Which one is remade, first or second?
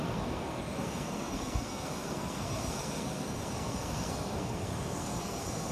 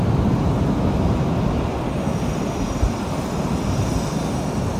first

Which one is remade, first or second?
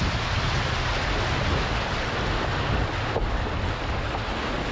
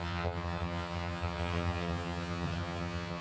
second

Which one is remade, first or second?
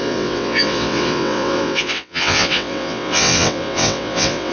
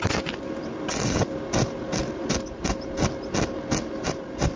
first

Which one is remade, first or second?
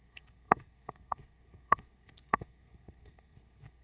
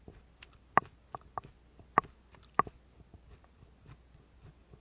first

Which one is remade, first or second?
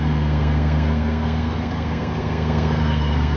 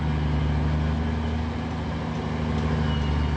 first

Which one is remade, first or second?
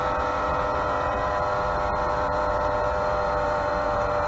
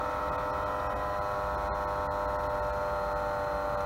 first